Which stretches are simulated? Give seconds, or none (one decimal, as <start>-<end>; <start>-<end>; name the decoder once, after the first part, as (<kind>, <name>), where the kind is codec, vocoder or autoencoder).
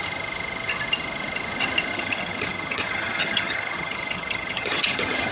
1.9-5.3 (vocoder, HiFi-GAN)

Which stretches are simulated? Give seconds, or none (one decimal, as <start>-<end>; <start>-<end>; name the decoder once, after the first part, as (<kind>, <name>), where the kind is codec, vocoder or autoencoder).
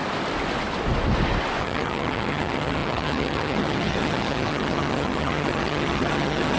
1.6-6.6 (vocoder, HiFi-GAN)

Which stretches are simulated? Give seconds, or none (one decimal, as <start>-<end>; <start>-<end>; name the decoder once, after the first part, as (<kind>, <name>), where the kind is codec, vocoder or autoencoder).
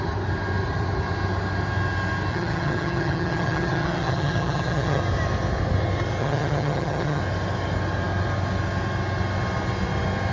2.3-5.0 (vocoder, HiFi-GAN); 6.2-7.2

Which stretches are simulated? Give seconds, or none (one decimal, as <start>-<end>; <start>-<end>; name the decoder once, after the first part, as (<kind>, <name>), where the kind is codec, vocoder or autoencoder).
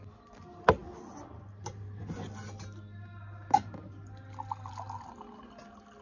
none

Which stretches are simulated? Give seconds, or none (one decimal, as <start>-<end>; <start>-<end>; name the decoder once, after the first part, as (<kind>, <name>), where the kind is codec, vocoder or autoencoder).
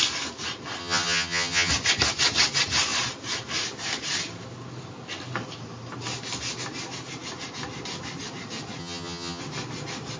0.8-1.7 (vocoder, HiFi-GAN); 8.8-9.4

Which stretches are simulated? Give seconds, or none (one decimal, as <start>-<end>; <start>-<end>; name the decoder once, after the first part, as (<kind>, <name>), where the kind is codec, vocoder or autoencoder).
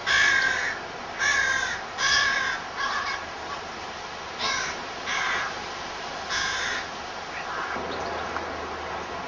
none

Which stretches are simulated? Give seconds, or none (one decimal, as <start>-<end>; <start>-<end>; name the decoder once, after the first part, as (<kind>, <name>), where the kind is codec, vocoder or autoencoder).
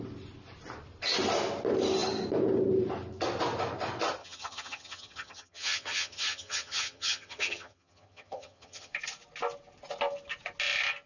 4.2-8.9 (vocoder, HiFi-GAN)